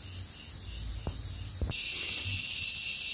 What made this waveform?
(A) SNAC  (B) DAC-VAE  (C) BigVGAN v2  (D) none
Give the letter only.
D